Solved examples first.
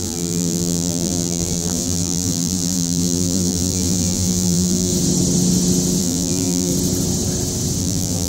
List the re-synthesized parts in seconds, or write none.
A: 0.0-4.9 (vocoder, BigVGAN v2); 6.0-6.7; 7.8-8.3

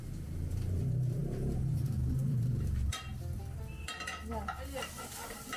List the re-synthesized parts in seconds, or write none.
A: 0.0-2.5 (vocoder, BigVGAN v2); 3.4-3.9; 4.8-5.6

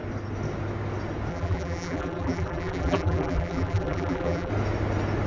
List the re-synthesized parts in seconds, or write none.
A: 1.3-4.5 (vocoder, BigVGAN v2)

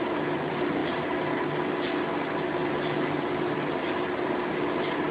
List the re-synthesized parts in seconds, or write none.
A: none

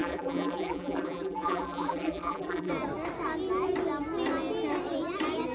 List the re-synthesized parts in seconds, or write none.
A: 0.0-2.7 (vocoder, BigVGAN v2)

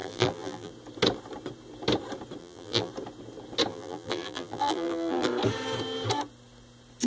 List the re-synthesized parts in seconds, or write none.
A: 0.0-0.7 (vocoder, BigVGAN v2); 2.4-2.9; 3.7-5.3